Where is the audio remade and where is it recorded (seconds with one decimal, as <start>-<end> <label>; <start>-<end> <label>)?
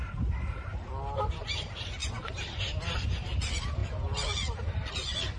0.0-0.7 recorded; 0.7-1.3 remade; 1.3-2.0 recorded; 2.0-2.8 remade; 2.8-5.4 recorded